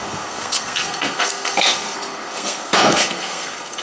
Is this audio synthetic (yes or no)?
yes